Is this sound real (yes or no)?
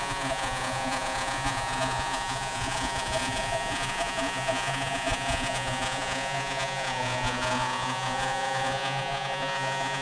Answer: no